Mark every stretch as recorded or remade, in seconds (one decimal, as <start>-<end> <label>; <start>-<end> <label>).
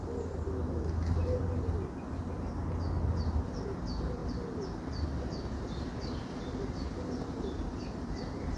0.0-8.6 recorded